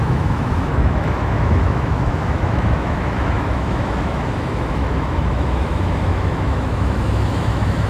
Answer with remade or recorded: remade